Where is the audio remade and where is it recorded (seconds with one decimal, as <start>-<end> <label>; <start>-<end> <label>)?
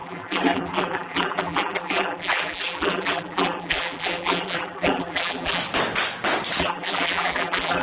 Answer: 0.0-5.6 remade; 5.6-6.6 recorded; 6.6-7.8 remade